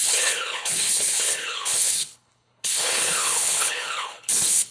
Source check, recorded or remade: remade